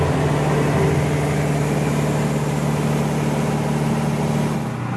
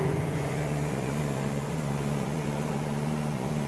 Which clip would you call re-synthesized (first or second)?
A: second